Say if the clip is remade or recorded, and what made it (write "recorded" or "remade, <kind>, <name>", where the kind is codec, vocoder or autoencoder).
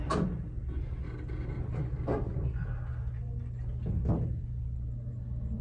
recorded